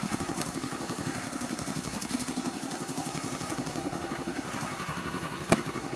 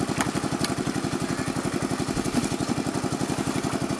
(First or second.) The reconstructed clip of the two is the first